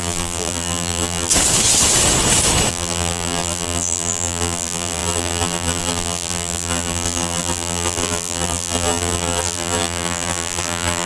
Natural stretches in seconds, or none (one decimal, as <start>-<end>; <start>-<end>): 1.3-2.7